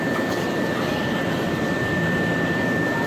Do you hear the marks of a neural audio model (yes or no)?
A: yes